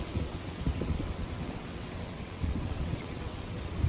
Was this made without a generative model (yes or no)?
no